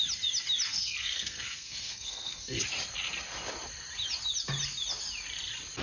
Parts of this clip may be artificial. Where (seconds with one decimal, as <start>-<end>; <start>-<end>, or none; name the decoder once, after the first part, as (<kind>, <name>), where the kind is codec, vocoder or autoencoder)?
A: 0.7-2.6 (codec, SNAC)